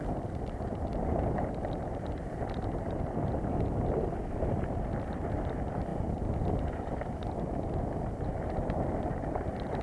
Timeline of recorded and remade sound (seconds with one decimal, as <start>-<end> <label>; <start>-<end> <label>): 0.0-9.8 remade